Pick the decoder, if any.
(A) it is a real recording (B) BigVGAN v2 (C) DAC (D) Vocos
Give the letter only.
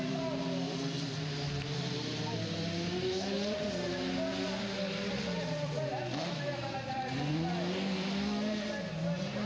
A